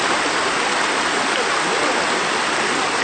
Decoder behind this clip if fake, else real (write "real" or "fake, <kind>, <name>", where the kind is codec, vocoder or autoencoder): real